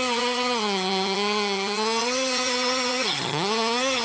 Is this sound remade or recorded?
remade